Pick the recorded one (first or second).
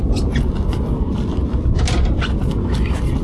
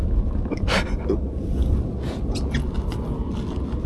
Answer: second